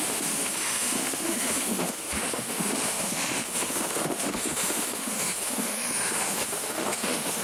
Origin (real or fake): fake